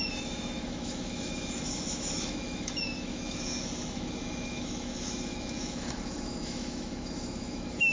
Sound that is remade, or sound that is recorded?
remade